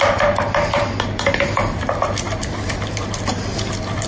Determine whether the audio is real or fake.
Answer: real